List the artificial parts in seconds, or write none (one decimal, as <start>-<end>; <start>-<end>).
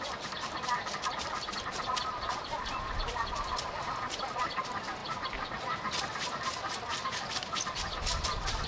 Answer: 0.0-5.0; 6.7-8.7